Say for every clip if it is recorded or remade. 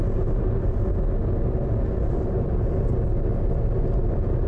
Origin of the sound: recorded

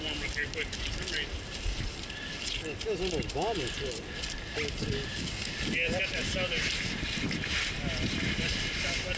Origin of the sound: recorded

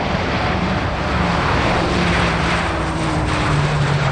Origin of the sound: remade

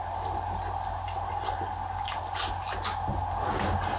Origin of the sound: recorded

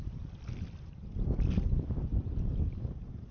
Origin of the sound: remade